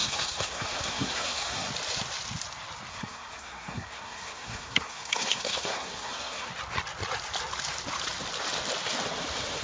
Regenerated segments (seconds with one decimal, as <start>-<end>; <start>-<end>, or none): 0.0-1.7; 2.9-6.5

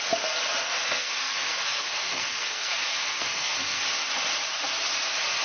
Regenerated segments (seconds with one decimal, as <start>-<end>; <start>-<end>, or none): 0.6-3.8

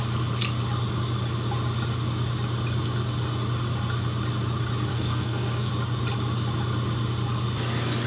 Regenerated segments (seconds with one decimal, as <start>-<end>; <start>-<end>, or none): 4.9-5.7